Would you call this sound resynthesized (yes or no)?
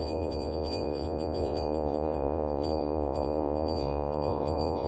yes